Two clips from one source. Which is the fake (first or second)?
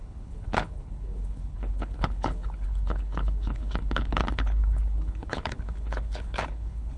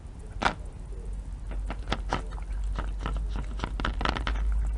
first